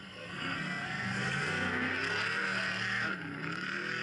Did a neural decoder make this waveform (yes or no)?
yes